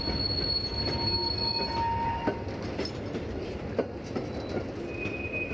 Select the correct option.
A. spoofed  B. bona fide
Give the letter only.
B